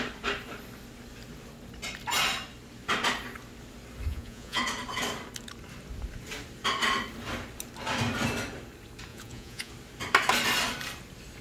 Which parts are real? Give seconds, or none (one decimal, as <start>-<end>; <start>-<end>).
0.0-4.1; 4.6-9.1; 9.7-11.4